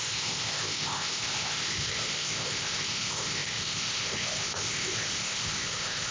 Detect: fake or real fake